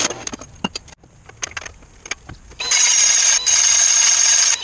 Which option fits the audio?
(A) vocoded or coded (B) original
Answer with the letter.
B